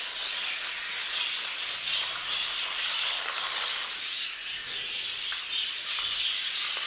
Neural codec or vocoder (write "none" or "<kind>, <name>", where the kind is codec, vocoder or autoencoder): none